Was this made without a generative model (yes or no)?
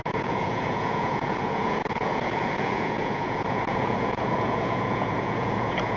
no